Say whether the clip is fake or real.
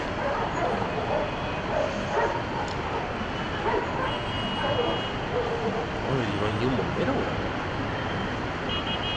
real